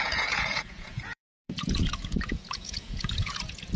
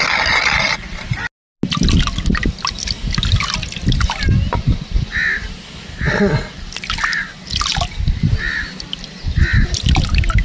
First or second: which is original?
second